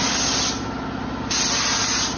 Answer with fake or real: real